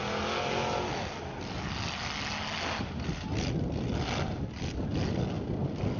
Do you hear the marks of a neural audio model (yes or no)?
no